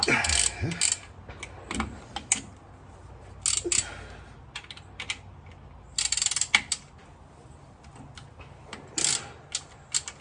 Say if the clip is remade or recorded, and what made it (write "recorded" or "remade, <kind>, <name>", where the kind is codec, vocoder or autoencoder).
recorded